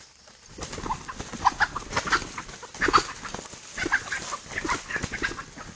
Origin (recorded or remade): recorded